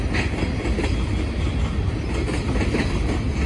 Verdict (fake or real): real